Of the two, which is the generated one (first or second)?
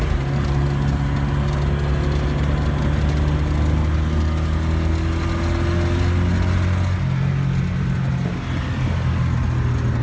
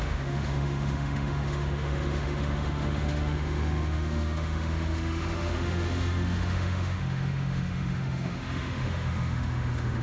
second